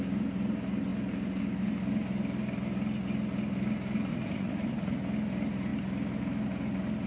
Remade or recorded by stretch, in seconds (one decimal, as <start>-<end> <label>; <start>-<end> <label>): 0.0-4.1 recorded; 4.1-5.0 remade; 5.0-7.1 recorded